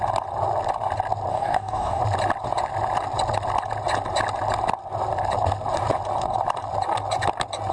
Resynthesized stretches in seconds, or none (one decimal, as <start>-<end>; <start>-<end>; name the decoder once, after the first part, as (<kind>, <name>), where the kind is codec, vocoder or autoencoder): 1.3-2.0 (codec, DAC)